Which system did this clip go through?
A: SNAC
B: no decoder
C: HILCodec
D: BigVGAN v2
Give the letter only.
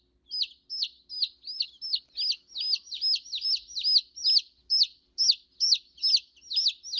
B